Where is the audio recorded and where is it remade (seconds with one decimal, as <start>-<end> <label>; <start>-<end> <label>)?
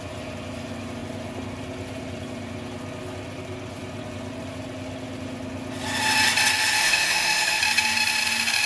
0.0-6.8 recorded; 6.8-7.6 remade; 7.6-8.7 recorded